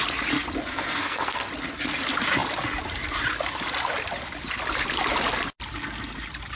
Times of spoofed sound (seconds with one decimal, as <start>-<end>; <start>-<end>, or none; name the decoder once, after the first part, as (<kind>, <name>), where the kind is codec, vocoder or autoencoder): 0.7-1.5 (codec, SNAC)